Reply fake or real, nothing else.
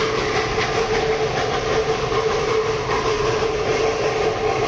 real